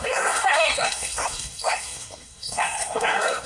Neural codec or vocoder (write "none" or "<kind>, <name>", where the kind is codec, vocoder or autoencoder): codec, SNAC